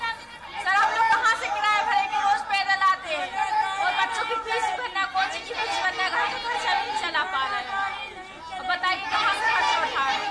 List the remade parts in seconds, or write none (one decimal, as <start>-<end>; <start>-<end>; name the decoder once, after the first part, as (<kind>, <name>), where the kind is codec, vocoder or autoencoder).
none